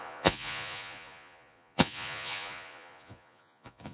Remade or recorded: remade